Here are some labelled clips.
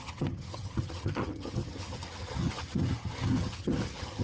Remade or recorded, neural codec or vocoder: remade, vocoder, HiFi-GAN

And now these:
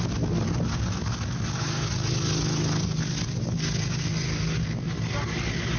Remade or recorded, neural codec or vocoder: recorded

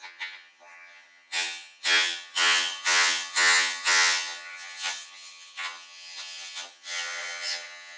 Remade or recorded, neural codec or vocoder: remade, vocoder, HiFi-GAN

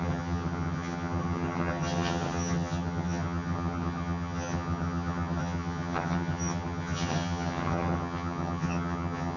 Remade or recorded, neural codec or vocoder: remade, vocoder, HiFi-GAN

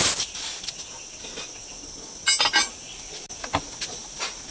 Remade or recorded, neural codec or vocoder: recorded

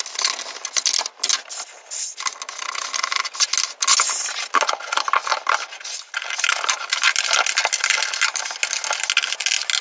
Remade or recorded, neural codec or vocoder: recorded